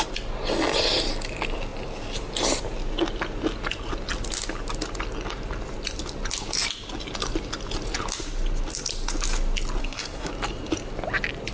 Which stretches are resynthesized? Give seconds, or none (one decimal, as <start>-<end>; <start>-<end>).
9.8-10.3